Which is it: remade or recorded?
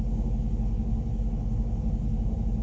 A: recorded